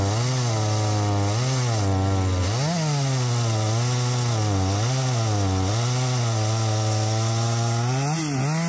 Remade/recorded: recorded